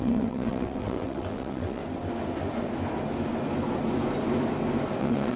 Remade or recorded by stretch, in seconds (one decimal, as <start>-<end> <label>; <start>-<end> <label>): 0.0-1.8 remade; 1.8-5.0 recorded; 5.0-5.4 remade